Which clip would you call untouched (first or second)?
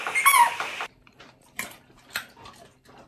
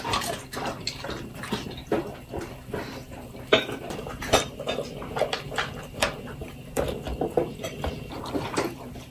first